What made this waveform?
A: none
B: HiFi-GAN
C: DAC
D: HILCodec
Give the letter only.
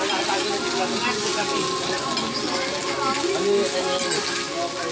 A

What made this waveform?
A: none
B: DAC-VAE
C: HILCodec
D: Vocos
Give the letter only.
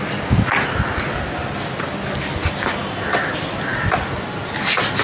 A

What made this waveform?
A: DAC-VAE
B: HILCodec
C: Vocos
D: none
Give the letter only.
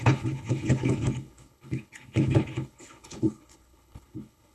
B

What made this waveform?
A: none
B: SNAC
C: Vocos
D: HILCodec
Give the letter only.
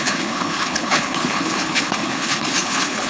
D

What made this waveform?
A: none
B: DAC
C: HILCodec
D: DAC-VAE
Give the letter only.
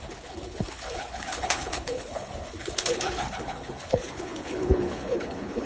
C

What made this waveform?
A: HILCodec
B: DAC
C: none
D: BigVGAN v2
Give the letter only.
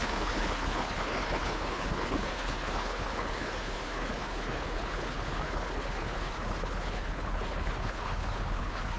A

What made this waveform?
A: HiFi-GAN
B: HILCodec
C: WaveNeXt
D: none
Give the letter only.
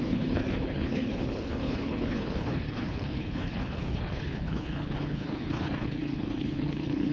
B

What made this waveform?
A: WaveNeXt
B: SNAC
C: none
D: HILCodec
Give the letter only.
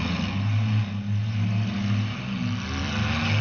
C